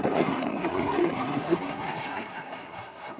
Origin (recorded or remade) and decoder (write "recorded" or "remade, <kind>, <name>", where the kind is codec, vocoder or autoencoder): remade, codec, SNAC